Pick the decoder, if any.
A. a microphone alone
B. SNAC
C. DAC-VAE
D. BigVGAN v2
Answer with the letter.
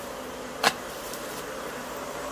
D